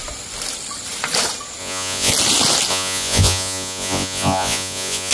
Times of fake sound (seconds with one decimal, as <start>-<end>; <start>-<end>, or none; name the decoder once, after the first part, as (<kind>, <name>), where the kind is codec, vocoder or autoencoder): 1.6-2.1 (vocoder, Vocos); 2.7-5.1